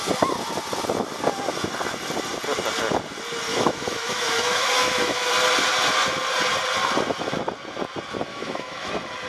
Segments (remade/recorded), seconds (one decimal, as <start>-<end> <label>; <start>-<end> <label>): 0.0-3.5 recorded; 3.5-5.3 remade; 5.3-8.3 recorded; 8.3-8.9 remade; 8.9-9.3 recorded

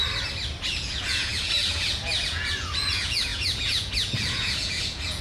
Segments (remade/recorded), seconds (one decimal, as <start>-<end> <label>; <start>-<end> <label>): 0.0-0.7 recorded; 0.7-5.2 remade

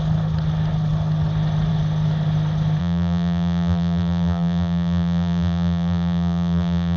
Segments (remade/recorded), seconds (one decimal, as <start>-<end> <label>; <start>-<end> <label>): 0.0-2.8 recorded; 2.8-7.0 remade

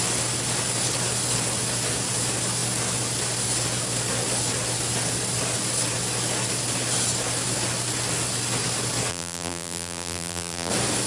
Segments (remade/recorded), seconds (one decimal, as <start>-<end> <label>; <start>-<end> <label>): 0.0-9.1 recorded; 9.1-10.7 remade; 10.7-11.1 recorded

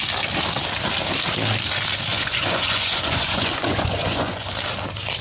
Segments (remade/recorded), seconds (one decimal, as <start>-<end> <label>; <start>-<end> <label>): 0.0-2.1 recorded; 2.1-4.5 remade; 4.5-5.2 recorded

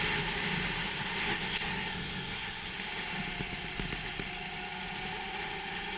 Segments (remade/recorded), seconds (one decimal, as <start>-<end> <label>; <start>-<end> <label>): 0.0-1.2 recorded; 1.2-2.7 remade; 2.7-6.0 recorded

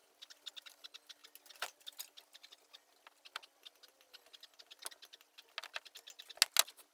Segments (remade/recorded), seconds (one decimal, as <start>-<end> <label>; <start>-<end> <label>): 0.0-6.9 recorded